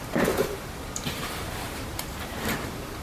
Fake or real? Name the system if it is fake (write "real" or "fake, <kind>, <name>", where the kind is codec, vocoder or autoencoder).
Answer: fake, vocoder, BigVGAN v2